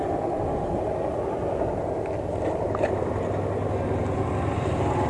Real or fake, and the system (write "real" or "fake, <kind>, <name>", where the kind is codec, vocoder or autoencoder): real